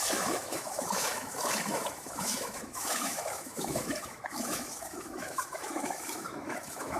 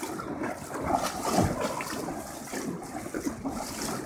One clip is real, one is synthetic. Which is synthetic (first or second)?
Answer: first